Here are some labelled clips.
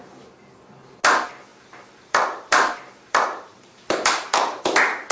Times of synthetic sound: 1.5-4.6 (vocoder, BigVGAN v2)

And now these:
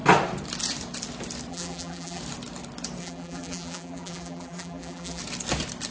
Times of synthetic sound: 1.5-2.2 (vocoder, BigVGAN v2); 3.0-5.2

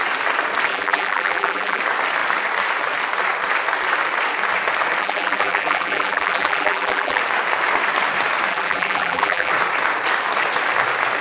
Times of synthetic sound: 0.7-1.8 (vocoder, BigVGAN v2); 5.0-7.2; 8.5-9.5

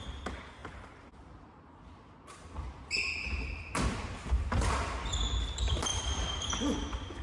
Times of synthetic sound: 5.9-7.2 (vocoder, BigVGAN v2)